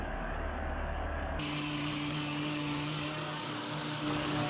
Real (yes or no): no